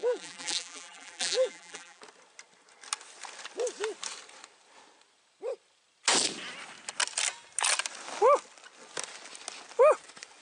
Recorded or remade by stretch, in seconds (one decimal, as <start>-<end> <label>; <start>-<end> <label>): 0.0-2.0 remade; 2.0-10.4 recorded

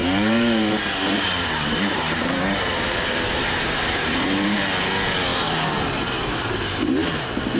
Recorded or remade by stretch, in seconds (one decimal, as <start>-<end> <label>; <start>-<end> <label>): 0.0-4.6 remade; 4.6-5.3 recorded; 5.3-7.6 remade

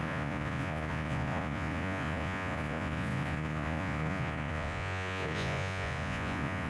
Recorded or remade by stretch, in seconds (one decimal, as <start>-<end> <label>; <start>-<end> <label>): 0.0-6.7 remade

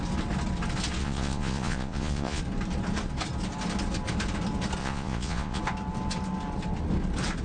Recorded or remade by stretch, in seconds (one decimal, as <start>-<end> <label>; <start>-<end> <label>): 0.0-1.0 recorded; 1.0-2.4 remade; 2.4-4.8 recorded; 4.8-5.6 remade; 5.6-7.4 recorded

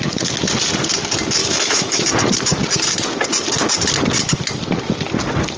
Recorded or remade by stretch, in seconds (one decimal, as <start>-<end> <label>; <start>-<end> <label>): 0.0-1.4 recorded; 1.4-2.1 remade; 2.1-5.6 recorded